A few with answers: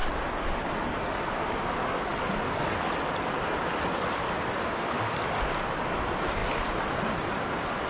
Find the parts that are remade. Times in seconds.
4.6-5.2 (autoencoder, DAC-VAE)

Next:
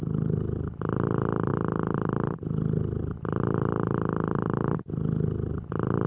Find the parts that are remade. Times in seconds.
none

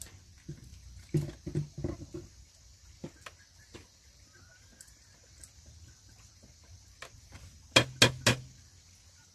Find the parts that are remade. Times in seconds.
none

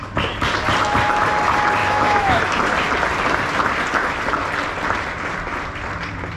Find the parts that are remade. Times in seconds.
1.8-2.4 (autoencoder, DAC-VAE)

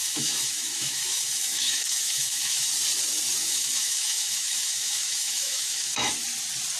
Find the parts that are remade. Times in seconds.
0.0-2.7 (autoencoder, DAC-VAE); 3.4-6.1

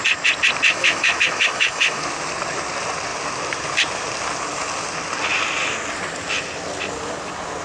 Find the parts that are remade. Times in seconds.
0.7-2.0 (autoencoder, DAC-VAE)